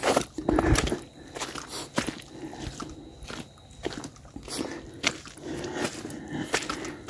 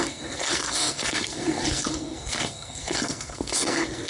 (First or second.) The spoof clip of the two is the second